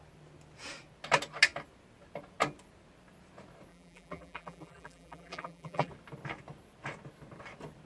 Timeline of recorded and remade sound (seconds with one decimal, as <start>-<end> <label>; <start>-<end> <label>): 0.0-3.7 recorded; 3.7-5.9 remade; 5.9-7.9 recorded